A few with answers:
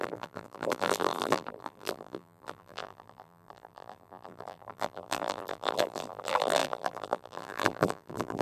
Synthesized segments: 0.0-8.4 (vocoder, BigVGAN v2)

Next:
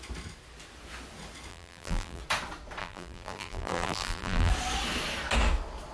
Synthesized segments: 1.5-2.2 (vocoder, BigVGAN v2); 2.8-4.5

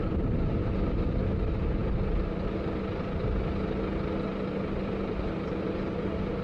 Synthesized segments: none